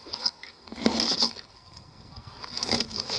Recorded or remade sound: remade